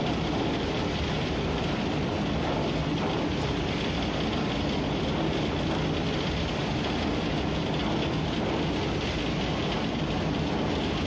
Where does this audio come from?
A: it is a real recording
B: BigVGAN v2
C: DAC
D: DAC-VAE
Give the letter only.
A